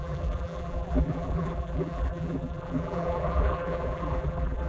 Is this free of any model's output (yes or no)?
no